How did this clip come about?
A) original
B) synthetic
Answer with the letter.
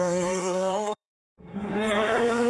B